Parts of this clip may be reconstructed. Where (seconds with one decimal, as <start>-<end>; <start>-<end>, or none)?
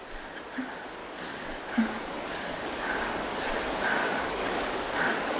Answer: 1.0-3.5; 4.0-5.4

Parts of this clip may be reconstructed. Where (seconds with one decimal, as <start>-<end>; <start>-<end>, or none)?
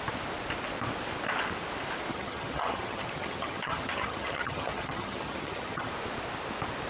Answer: 2.1-5.9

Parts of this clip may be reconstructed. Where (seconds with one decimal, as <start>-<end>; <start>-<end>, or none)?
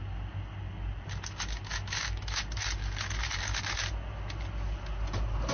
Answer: 1.7-2.4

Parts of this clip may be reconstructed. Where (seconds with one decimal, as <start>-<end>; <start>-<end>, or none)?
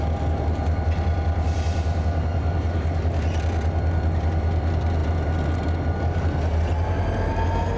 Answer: none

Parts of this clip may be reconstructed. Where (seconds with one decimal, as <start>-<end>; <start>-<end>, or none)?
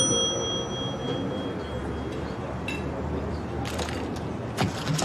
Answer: none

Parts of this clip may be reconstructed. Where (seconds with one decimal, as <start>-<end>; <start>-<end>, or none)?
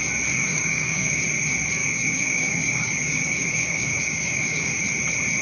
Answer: 0.5-1.2; 1.8-4.8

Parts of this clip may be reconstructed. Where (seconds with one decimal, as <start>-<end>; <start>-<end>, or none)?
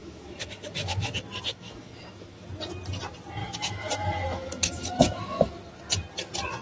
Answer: 0.0-1.1; 1.5-2.5; 3.4-5.6